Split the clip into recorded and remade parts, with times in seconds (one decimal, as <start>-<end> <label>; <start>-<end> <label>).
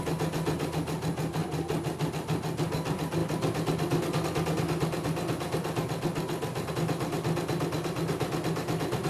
0.0-9.1 recorded